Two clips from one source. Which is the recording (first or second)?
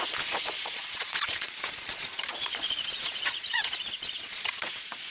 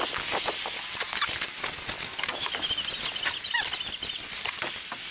second